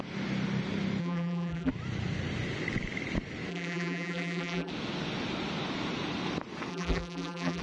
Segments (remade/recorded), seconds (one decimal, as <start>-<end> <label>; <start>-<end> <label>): 0.0-1.0 recorded; 1.0-1.7 remade; 1.7-3.5 recorded; 3.5-4.7 remade; 4.7-6.7 recorded; 6.7-7.6 remade